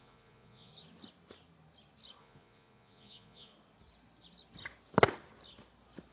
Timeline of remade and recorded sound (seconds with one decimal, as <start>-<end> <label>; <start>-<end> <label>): 0.0-0.7 remade; 0.7-2.2 recorded; 2.2-3.5 remade; 3.5-6.1 recorded

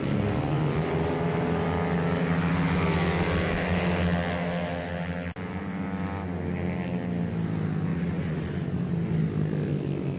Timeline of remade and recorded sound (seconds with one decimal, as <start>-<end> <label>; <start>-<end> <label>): 0.0-7.9 recorded; 7.9-8.5 remade; 8.5-10.2 recorded

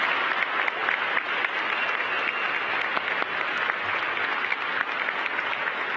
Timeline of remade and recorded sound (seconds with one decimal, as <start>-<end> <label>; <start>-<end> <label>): 0.0-6.0 recorded

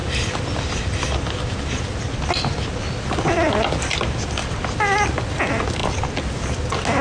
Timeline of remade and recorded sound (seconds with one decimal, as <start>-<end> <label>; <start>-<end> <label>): 0.0-7.0 recorded